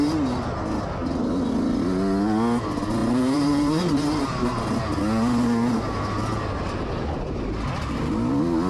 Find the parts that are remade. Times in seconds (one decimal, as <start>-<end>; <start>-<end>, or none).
3.0-4.8